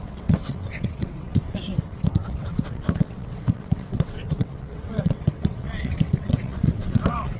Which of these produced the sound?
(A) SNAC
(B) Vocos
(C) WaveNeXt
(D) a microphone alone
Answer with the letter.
C